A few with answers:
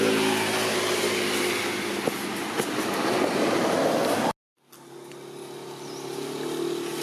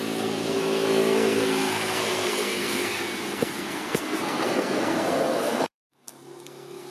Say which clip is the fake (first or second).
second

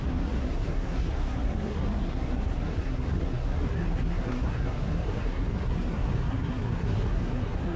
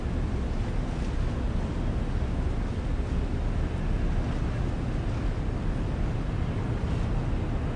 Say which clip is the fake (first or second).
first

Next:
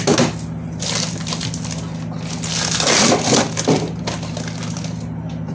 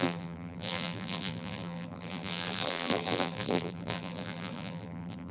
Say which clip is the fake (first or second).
second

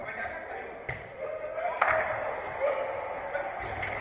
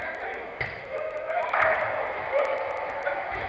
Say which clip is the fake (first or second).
second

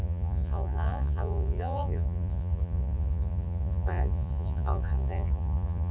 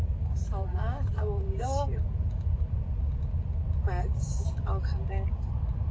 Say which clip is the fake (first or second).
first